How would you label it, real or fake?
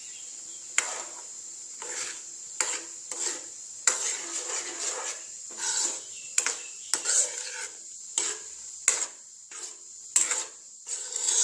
real